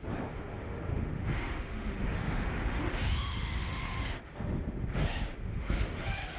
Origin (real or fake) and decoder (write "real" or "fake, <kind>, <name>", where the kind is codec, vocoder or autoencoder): fake, autoencoder, DAC-VAE